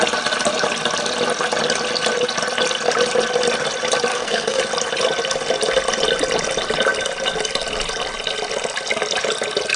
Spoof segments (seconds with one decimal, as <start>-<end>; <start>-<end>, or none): 4.1-4.6